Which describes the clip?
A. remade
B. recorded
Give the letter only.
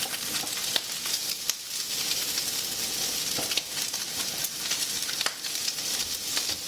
B